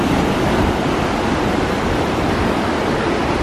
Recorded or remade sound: recorded